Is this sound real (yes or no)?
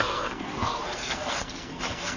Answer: no